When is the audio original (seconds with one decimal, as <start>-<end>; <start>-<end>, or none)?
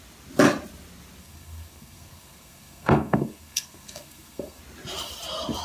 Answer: 0.0-1.2; 4.6-5.6